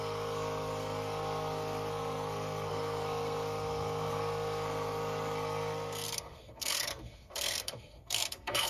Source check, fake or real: fake